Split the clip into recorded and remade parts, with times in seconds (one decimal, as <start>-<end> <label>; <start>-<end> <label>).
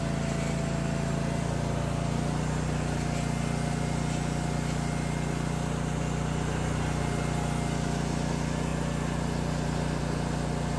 0.0-10.8 recorded